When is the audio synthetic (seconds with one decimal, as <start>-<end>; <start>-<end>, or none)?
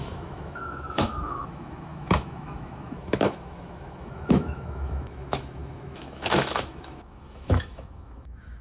0.0-8.6